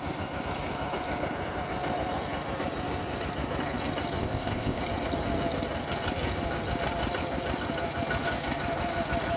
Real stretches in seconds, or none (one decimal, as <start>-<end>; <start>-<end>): 0.0-4.2; 4.8-9.4